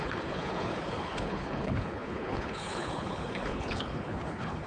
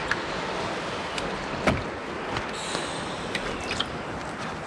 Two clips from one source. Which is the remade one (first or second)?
first